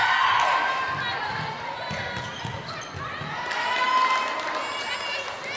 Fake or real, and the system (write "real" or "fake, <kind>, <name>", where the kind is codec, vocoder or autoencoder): real